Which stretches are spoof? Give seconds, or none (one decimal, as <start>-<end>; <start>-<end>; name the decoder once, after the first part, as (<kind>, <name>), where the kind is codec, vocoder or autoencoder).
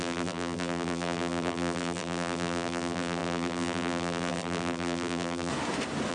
0.0-5.5 (vocoder, BigVGAN v2)